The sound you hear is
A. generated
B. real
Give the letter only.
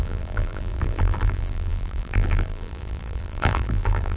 A